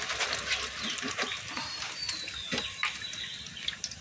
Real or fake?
real